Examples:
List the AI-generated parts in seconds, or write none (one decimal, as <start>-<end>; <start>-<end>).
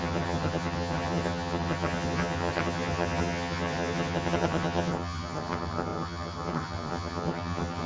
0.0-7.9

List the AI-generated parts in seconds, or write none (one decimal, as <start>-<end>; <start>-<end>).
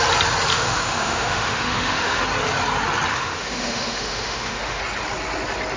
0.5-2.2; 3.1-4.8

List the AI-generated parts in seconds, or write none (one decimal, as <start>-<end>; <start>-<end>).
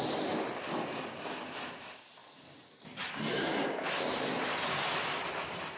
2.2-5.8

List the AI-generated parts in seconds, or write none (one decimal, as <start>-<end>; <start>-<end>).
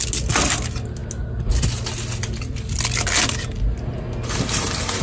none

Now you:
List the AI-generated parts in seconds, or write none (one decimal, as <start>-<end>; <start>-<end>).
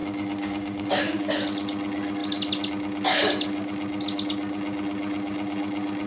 0.0-1.0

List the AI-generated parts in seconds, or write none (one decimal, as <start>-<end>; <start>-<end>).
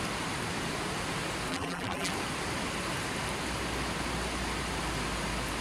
1.5-2.1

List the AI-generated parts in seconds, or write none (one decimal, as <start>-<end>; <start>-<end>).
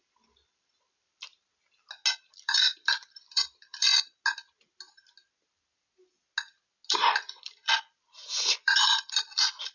0.0-1.3; 2.2-3.9; 6.9-9.7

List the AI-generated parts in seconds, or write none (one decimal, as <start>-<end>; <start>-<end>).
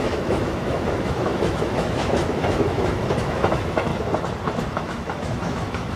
0.0-3.9; 4.7-6.0